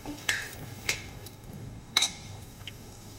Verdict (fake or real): fake